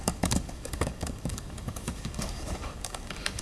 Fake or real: fake